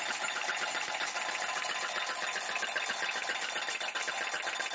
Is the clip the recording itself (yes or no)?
yes